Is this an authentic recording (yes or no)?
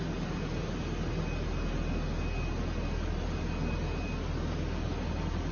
yes